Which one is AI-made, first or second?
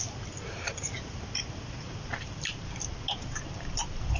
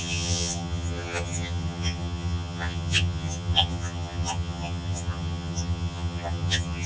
second